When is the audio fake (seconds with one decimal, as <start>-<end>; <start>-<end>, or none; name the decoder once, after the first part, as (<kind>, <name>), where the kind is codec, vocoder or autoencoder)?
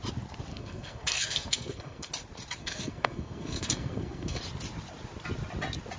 0.5-2.1 (codec, SNAC); 2.6-4.4